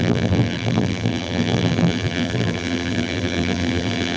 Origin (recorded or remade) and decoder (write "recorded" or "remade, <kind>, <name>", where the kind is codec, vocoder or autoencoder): remade, vocoder, BigVGAN v2